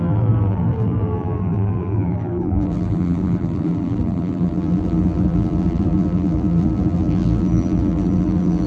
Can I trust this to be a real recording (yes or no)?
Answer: no